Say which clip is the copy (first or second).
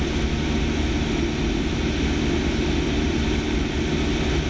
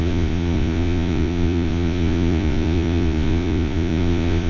second